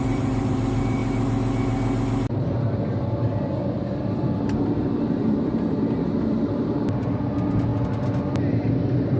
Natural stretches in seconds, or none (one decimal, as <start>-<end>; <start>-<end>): 1.0-4.0; 7.7-8.3